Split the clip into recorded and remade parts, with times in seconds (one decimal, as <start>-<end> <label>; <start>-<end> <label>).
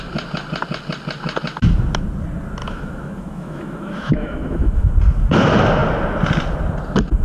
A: 0.0-2.6 recorded; 2.6-4.9 remade; 4.9-7.2 recorded